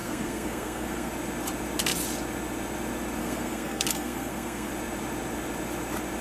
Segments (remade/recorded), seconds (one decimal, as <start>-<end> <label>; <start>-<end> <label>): 0.0-1.1 remade; 1.1-3.2 recorded; 3.2-4.7 remade; 4.7-6.2 recorded